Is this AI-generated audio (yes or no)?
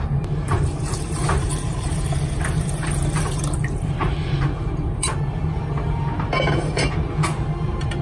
yes